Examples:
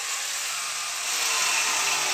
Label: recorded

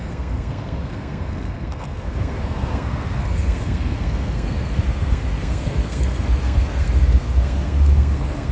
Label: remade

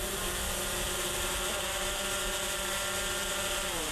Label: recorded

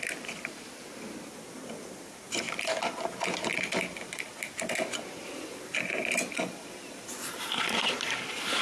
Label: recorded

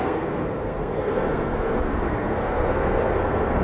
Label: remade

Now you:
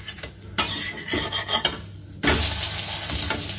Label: recorded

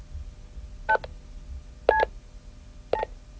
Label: recorded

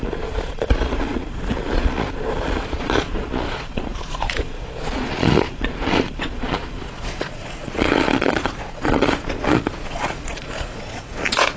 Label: remade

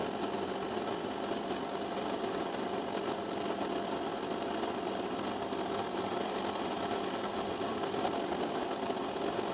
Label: recorded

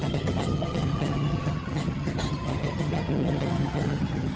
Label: remade